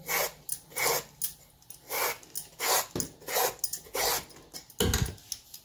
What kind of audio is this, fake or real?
real